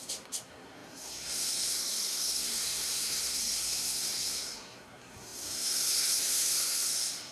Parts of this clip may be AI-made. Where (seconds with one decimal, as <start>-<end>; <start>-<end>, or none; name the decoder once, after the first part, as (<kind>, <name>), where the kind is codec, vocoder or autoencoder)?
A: 0.0-7.3 (codec, SNAC)